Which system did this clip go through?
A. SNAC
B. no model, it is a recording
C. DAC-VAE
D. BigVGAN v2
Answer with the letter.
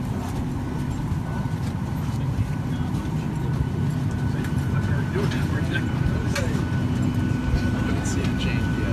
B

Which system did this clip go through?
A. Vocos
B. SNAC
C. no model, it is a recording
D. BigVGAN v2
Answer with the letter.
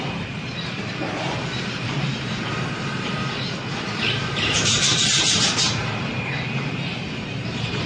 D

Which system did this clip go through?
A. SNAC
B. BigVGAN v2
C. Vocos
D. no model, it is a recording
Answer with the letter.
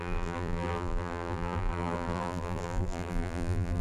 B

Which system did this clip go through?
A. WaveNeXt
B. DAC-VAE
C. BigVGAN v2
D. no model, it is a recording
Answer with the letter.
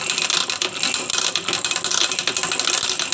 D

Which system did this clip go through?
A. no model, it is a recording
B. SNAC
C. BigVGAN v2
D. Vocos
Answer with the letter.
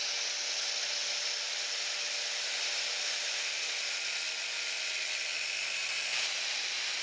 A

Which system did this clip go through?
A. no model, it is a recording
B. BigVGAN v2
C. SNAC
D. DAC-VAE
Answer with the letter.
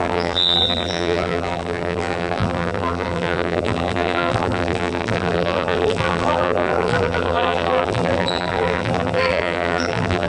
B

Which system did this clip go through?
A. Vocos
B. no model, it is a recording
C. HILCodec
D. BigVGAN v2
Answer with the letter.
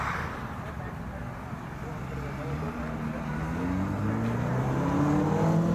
B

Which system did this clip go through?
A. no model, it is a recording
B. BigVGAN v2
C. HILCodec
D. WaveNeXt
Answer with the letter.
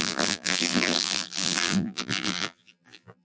B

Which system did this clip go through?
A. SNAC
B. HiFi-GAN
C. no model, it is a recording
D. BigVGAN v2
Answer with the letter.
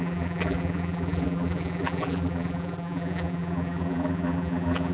D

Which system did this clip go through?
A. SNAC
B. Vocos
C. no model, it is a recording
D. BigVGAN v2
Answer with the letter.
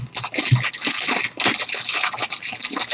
C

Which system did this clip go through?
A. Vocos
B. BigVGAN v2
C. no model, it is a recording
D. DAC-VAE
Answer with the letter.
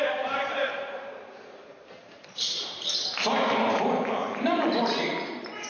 B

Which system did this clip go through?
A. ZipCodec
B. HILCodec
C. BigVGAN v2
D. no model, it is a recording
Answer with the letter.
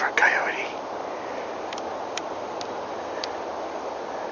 D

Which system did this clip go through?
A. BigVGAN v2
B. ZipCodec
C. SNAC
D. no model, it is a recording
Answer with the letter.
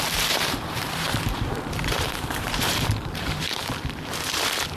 A